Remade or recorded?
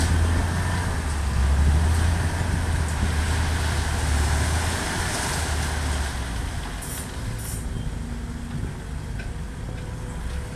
recorded